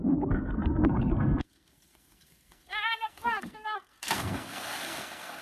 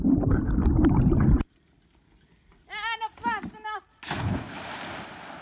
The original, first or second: second